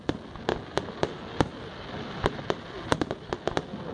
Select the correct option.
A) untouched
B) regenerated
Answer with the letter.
A